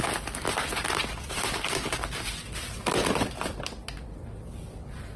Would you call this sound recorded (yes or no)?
yes